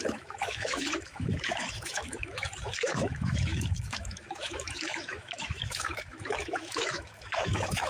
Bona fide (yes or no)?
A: no